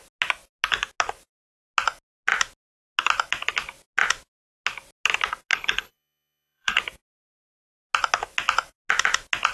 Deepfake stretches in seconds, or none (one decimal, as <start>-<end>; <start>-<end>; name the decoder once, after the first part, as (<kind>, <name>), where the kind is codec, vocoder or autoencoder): 5.5-6.8 (codec, HILCodec)